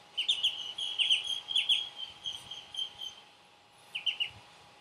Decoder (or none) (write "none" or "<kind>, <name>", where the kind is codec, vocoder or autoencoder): vocoder, BigVGAN v2